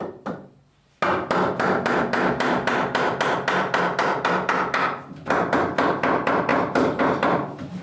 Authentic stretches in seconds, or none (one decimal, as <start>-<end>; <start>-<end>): 0.6-1.1